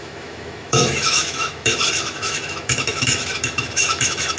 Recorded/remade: remade